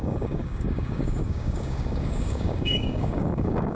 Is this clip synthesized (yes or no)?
yes